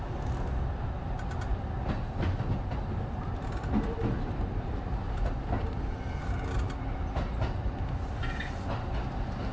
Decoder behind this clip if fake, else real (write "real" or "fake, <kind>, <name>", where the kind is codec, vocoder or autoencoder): real